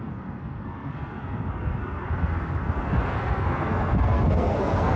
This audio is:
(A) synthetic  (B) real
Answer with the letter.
A